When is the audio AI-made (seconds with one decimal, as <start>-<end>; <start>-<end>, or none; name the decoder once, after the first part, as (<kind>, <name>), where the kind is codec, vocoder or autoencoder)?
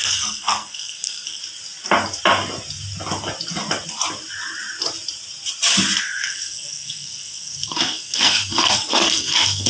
0.0-1.4 (codec, SNAC); 6.0-9.7